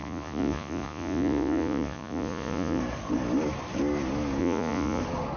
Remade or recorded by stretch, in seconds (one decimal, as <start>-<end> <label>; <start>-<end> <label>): 0.0-2.8 remade; 2.8-4.4 recorded; 4.4-5.0 remade; 5.0-5.4 recorded